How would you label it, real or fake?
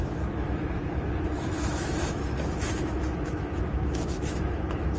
fake